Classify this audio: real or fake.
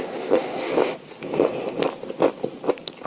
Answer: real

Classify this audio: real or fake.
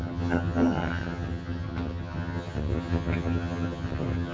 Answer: fake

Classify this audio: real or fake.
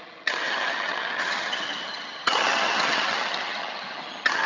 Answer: fake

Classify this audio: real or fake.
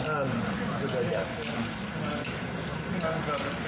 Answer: real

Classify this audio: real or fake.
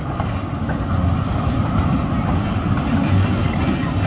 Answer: real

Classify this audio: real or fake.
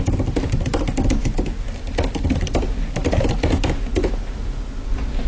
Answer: real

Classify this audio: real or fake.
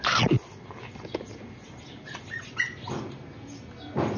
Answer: real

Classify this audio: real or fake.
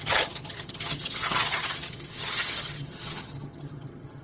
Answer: fake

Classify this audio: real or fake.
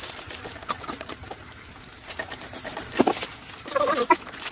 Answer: real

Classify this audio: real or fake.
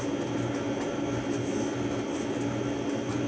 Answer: real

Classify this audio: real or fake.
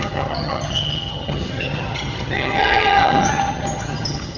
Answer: fake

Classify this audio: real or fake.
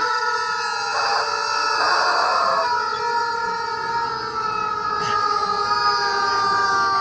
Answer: real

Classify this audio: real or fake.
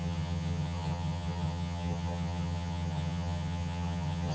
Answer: fake